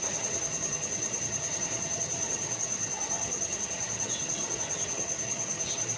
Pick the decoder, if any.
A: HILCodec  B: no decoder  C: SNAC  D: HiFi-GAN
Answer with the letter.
D